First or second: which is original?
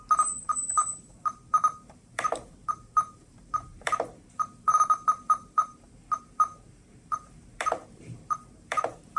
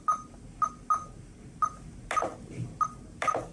second